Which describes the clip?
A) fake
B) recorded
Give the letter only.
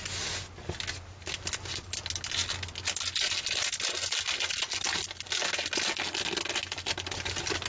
B